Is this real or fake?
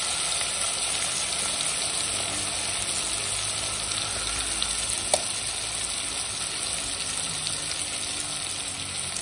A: real